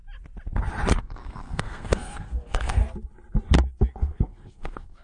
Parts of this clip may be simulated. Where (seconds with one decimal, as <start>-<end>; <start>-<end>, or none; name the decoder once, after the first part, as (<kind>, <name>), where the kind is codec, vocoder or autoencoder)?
1.0-2.8 (codec, SNAC); 4.0-5.0